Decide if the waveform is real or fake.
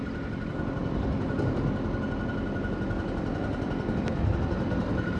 real